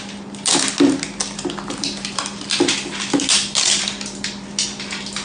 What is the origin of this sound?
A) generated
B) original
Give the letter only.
B